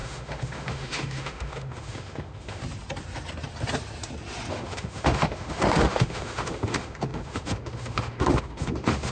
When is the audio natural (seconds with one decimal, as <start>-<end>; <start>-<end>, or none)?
2.6-4.5